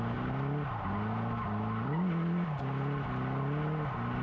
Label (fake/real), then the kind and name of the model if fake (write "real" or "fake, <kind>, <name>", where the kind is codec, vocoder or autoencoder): real